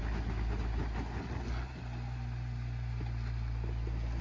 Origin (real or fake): real